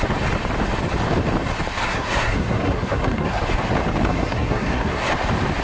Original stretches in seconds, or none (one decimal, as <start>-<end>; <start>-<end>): 0.0-1.8; 3.4-4.1; 5.1-5.6